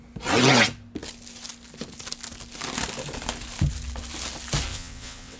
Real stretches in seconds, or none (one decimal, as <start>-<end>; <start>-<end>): 0.0-4.7

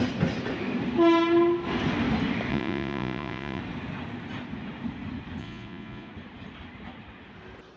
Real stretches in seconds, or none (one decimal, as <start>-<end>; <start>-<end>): 0.0-2.5; 3.6-5.4; 6.1-7.8

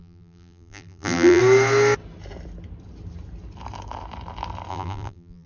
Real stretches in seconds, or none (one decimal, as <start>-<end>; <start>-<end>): 1.4-4.7

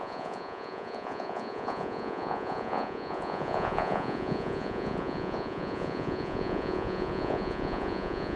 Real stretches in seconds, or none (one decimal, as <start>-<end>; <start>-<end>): none

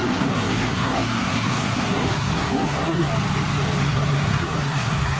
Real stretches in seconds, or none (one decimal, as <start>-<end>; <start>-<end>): 3.1-3.8

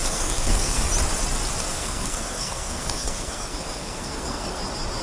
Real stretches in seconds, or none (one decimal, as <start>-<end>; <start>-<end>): 0.8-1.7; 4.6-5.0

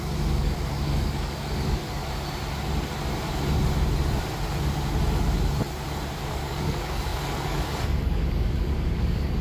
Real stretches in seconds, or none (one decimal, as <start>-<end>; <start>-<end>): 2.0-6.3

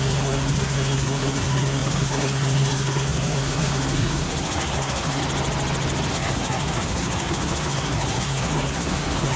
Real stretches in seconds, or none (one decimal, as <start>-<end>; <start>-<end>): 5.2-6.1